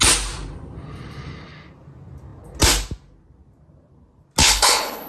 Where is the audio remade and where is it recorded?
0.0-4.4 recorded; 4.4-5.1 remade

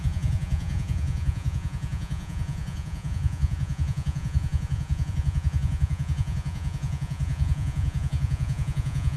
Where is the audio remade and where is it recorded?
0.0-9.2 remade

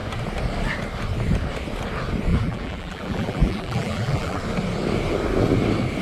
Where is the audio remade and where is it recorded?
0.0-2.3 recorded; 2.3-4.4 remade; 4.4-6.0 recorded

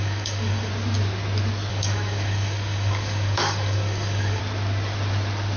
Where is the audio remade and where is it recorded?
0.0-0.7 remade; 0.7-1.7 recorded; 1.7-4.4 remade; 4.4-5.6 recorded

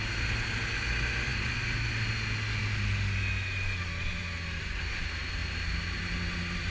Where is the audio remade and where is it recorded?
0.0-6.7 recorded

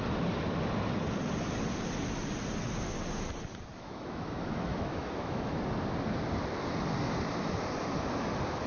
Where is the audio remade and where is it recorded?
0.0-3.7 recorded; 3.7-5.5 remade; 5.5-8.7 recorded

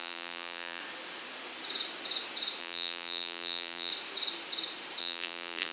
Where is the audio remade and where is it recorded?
0.0-0.8 remade; 0.8-2.6 recorded; 2.6-3.9 remade; 3.9-5.0 recorded; 5.0-5.7 remade

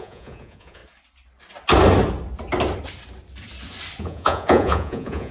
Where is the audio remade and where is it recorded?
0.0-0.8 remade; 0.8-4.0 recorded; 4.0-5.3 remade